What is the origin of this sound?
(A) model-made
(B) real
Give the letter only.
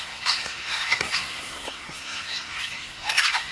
A